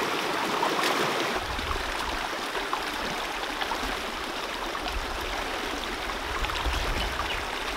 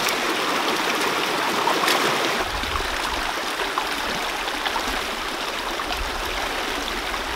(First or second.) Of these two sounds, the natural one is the second